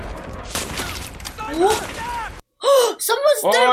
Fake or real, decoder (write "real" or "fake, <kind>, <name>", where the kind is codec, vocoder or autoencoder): fake, vocoder, BigVGAN v2